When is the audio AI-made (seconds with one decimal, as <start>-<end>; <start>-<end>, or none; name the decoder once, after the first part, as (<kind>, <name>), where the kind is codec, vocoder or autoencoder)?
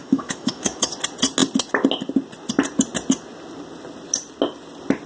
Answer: 0.0-0.9 (autoencoder, DAC-VAE)